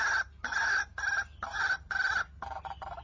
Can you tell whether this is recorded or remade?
recorded